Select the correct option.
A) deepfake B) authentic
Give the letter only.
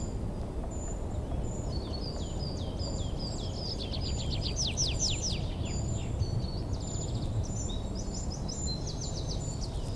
B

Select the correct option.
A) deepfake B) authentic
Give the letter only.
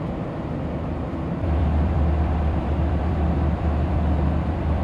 A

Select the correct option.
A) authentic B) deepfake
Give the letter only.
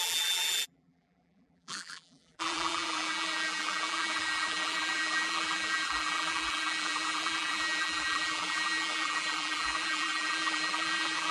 B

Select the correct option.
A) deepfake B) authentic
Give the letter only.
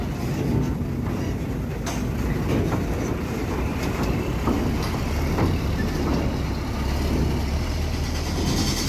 B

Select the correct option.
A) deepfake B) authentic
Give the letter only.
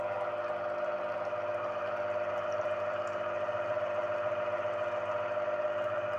B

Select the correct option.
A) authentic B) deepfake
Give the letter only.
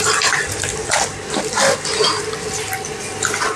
B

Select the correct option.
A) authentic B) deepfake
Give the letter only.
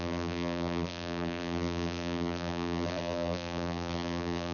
B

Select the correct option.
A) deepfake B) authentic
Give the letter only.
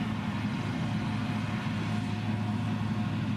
B